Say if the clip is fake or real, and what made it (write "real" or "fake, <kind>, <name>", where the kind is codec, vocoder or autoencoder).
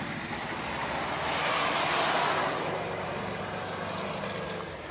real